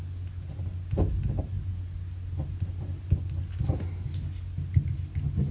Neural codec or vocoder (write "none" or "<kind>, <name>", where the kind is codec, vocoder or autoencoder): none